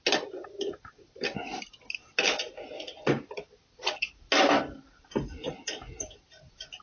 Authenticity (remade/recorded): recorded